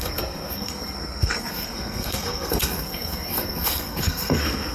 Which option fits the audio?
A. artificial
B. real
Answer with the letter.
A